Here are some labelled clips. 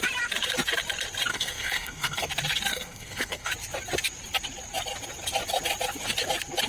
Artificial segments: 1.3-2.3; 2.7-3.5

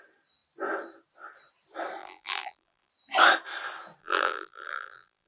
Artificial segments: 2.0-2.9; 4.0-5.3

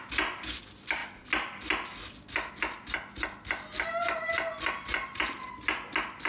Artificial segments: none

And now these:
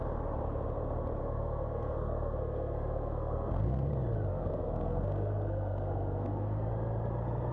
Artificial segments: 1.2-3.9; 4.3-6.7